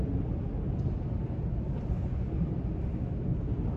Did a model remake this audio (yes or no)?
no